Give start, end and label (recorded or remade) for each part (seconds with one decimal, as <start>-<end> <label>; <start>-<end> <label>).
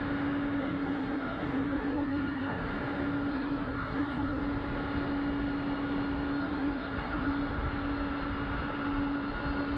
0.0-0.6 recorded; 0.6-2.7 remade; 2.7-3.3 recorded; 3.3-4.4 remade; 4.4-6.4 recorded; 6.4-7.3 remade; 7.3-9.8 recorded